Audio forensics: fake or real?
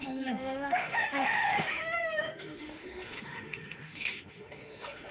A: fake